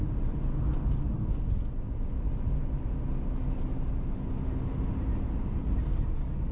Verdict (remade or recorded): recorded